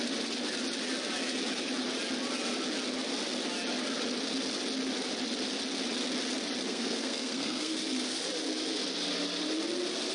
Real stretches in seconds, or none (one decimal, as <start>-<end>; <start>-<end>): 0.0-6.7; 7.8-10.1